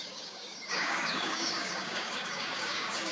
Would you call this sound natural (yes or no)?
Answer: no